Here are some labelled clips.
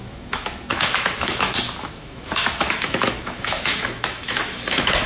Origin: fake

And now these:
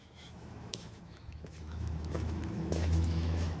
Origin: fake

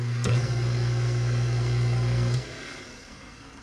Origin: fake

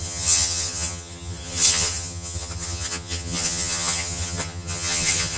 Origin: fake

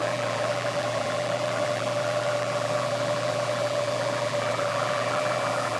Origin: fake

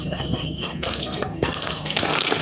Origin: fake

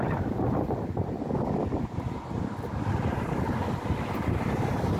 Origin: real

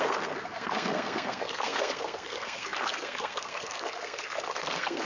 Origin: fake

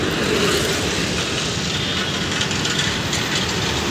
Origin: real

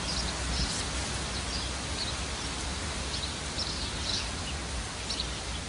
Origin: real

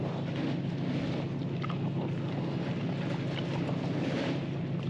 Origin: real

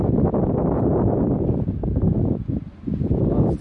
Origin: real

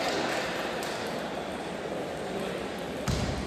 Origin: fake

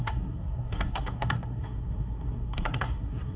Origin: fake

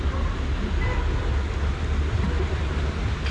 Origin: real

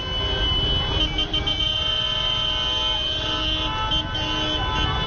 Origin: real